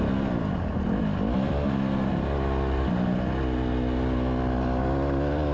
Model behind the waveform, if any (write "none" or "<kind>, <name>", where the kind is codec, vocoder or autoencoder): none